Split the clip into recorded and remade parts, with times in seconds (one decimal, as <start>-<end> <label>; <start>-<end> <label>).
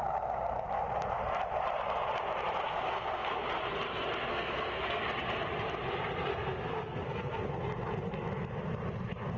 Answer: 0.0-2.7 recorded; 2.7-3.3 remade; 3.3-4.3 recorded; 4.3-5.0 remade; 5.0-6.3 recorded; 6.3-7.5 remade; 7.5-9.4 recorded